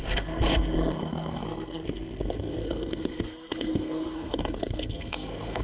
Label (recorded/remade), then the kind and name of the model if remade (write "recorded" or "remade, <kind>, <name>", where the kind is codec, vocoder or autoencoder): remade, codec, SNAC